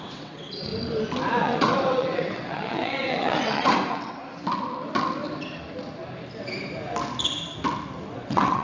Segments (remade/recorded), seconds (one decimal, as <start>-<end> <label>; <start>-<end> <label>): 0.0-0.7 remade; 0.7-1.4 recorded; 1.4-4.2 remade; 4.2-8.1 recorded; 8.1-8.6 remade